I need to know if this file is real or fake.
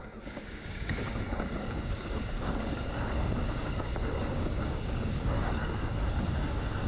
fake